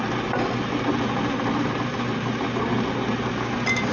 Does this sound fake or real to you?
real